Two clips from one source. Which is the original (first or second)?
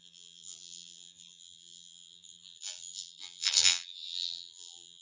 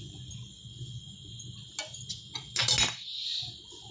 second